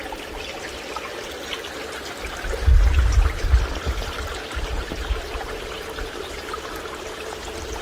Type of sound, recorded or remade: recorded